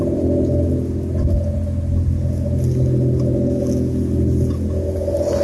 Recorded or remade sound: recorded